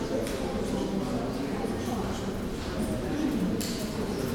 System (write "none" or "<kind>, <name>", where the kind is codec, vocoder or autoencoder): none